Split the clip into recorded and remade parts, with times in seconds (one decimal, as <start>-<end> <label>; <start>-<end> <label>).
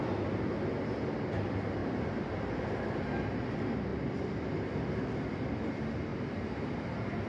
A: 0.0-1.8 recorded; 1.8-2.3 remade; 2.3-6.1 recorded; 6.1-7.3 remade